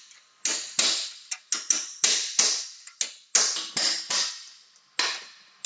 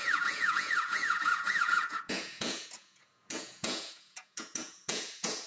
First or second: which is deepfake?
second